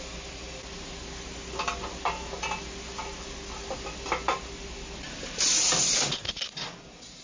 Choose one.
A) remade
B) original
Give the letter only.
B